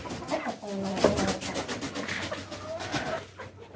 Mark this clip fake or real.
real